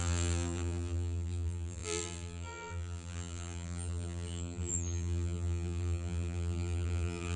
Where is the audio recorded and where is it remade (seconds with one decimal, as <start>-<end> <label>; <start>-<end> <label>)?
0.0-7.4 remade

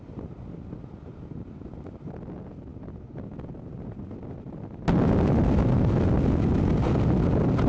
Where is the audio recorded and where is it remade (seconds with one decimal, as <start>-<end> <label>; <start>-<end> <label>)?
0.0-7.7 recorded

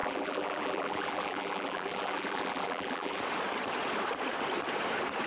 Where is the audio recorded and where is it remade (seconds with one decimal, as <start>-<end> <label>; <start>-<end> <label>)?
0.0-3.2 remade; 3.2-5.3 recorded

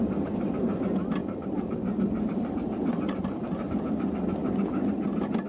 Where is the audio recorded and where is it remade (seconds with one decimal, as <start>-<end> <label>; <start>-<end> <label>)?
0.0-1.2 recorded; 1.2-3.7 remade; 3.7-4.4 recorded; 4.4-4.9 remade; 4.9-5.5 recorded

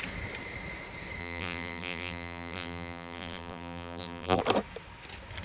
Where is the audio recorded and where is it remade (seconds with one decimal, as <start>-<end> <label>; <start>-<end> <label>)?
0.0-1.2 recorded; 1.2-4.4 remade; 4.4-5.4 recorded

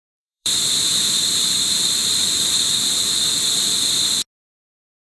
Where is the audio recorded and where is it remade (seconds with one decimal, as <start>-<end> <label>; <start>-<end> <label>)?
0.0-2.0 remade; 2.0-4.5 recorded; 4.5-5.2 remade